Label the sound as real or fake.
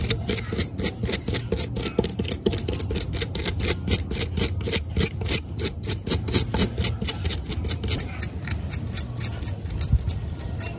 real